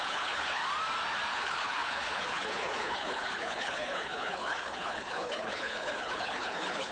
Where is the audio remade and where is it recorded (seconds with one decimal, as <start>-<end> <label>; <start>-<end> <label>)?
0.0-0.6 remade; 0.6-1.3 recorded; 1.3-6.9 remade